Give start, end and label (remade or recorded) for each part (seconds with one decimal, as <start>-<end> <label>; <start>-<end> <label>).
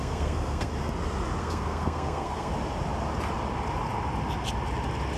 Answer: 0.0-0.7 remade; 0.7-1.4 recorded; 1.4-2.5 remade; 2.5-5.2 recorded